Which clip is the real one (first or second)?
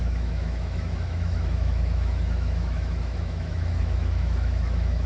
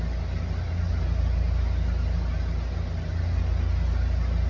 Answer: second